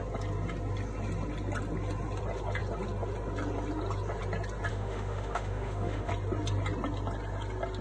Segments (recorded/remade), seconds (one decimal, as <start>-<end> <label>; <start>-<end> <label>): 0.0-4.7 recorded; 4.7-6.1 remade; 6.1-7.8 recorded